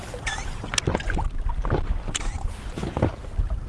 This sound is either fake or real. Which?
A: real